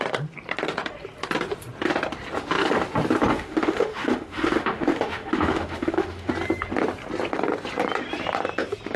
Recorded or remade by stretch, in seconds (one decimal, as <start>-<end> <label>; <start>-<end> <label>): 0.0-3.3 recorded; 3.3-6.3 remade; 6.3-9.0 recorded